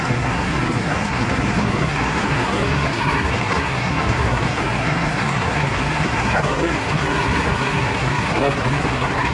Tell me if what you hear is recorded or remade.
remade